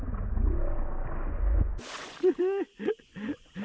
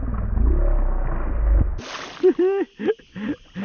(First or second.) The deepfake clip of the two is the first